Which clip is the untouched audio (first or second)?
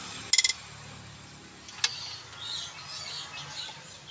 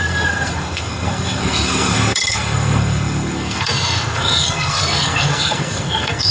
first